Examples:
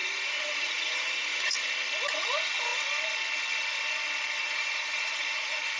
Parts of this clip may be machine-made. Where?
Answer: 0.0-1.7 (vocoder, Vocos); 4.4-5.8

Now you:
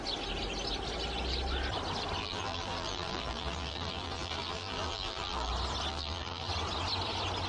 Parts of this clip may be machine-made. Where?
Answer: 2.2-5.5 (vocoder, BigVGAN v2); 5.9-6.5

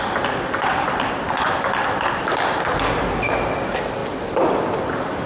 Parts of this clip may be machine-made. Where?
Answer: none

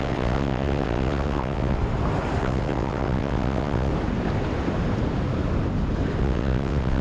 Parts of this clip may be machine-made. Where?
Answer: 0.0-1.8 (vocoder, WaveNeXt); 2.4-3.9; 6.2-7.0

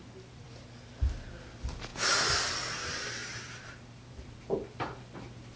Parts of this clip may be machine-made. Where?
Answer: 0.0-1.9 (vocoder, BigVGAN v2); 2.5-5.6